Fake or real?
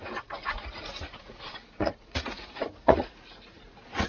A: fake